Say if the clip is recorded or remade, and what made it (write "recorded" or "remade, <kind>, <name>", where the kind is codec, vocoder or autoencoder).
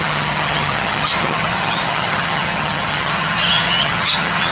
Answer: remade, vocoder, HiFi-GAN